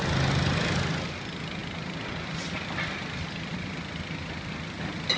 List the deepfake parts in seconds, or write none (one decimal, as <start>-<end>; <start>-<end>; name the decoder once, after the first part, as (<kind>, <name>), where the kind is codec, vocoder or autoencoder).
none